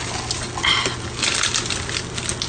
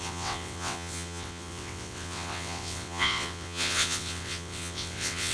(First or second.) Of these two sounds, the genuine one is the first